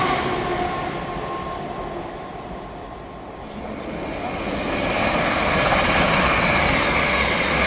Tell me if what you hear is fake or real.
real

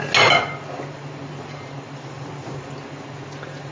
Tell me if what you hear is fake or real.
real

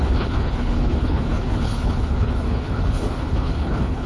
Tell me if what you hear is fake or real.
fake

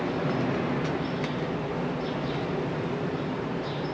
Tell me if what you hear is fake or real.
real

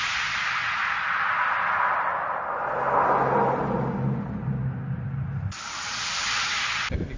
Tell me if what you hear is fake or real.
real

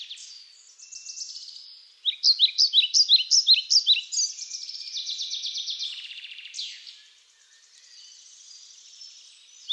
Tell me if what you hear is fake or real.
real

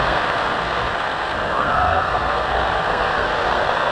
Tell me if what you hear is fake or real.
fake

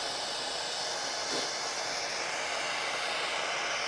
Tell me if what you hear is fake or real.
real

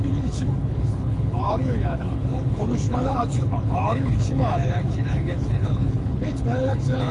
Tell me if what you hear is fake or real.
fake